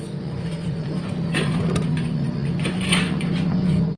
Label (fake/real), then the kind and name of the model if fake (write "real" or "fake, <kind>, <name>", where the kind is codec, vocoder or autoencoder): fake, vocoder, Vocos